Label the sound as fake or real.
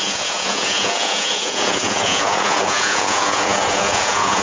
fake